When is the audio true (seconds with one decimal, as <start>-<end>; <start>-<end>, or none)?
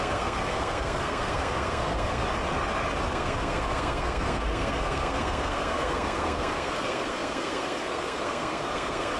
2.2-3.1